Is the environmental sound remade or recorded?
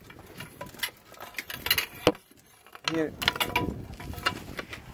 recorded